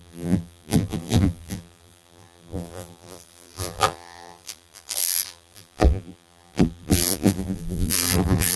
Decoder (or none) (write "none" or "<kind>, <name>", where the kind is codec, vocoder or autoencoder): vocoder, BigVGAN v2